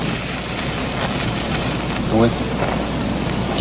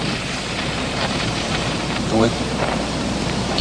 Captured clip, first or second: first